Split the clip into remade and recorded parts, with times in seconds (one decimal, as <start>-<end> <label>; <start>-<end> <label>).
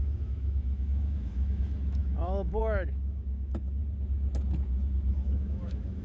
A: 0.0-3.8 remade; 3.8-5.1 recorded; 5.1-6.0 remade